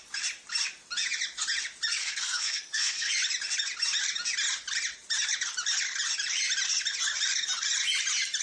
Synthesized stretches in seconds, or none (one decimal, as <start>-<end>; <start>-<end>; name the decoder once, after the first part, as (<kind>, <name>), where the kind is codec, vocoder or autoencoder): 2.0-3.1 (codec, SNAC)